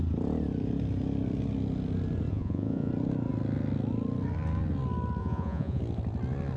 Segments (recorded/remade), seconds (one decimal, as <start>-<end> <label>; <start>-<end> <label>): 0.0-2.3 recorded; 2.3-2.9 remade; 2.9-5.2 recorded; 5.2-5.8 remade; 5.8-6.6 recorded